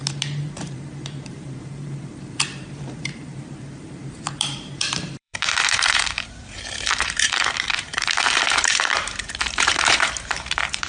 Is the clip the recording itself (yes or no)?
no